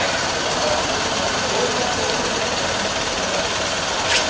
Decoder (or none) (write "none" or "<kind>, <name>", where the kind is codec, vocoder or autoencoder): none